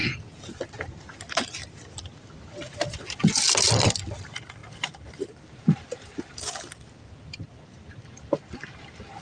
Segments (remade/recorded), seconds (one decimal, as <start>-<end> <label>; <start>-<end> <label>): 0.0-0.6 remade; 0.6-9.2 recorded